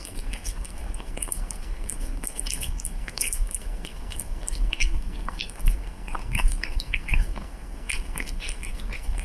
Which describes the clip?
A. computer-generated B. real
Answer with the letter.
A